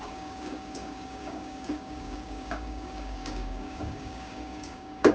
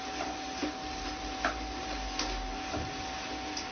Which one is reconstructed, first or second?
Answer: first